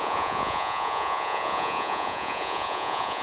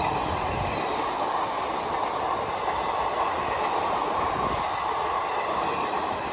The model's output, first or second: first